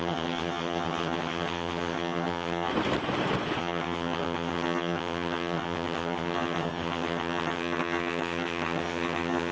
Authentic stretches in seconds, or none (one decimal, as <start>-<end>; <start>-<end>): 2.7-3.6